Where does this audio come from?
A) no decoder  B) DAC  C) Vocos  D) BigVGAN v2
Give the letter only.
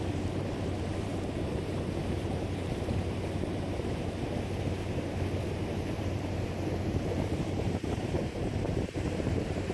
D